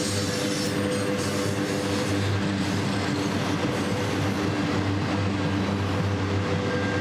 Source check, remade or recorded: recorded